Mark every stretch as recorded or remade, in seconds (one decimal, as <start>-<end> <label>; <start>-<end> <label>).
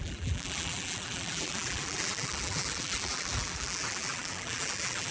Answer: 0.0-5.1 remade